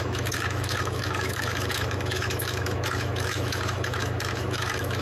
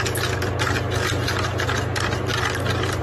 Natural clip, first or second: second